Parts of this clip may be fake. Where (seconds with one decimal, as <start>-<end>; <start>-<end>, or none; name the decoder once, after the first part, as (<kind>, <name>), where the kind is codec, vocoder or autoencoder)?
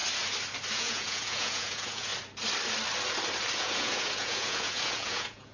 0.7-2.1 (vocoder, Vocos); 3.6-5.5